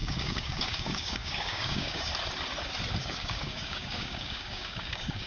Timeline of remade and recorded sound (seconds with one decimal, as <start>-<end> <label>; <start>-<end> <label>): 0.0-2.1 remade; 2.1-3.0 recorded; 3.0-5.3 remade